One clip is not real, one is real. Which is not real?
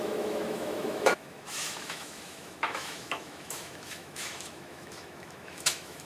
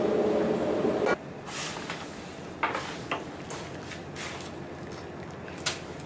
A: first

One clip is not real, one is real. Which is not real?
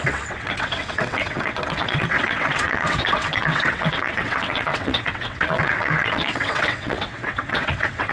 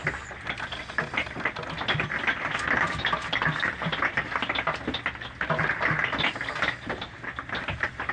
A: first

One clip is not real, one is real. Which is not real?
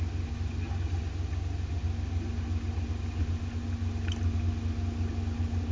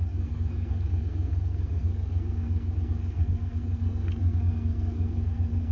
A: second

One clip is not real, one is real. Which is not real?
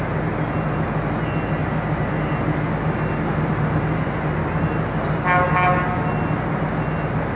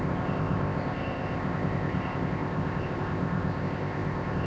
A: second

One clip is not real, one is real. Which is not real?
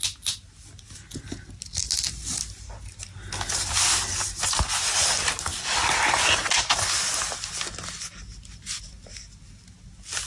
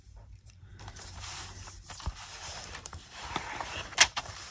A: second